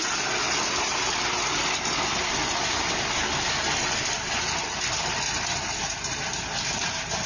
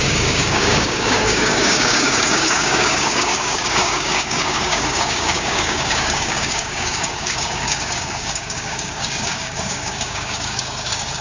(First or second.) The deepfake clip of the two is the second